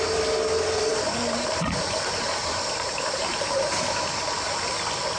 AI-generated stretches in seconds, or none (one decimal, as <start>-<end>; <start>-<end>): 0.9-4.0